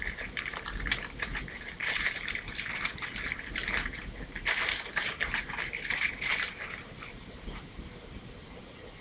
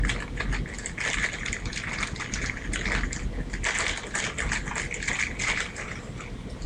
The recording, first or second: second